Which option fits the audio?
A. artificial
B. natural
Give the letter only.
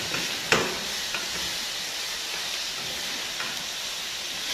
B